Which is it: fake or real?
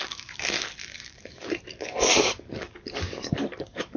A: fake